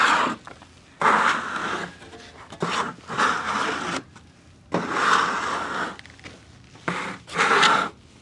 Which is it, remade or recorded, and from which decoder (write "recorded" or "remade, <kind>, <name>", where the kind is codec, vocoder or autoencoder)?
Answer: recorded